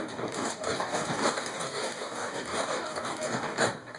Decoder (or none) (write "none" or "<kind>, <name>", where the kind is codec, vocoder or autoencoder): codec, DAC